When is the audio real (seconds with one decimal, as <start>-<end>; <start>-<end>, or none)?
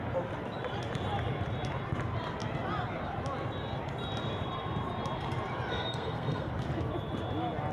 0.0-5.7; 6.5-7.7